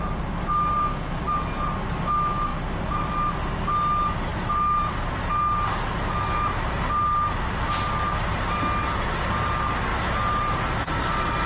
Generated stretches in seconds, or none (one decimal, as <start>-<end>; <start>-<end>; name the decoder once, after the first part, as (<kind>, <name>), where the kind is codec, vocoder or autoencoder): none